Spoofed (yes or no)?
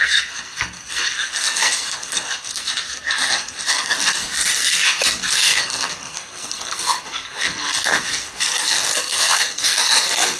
yes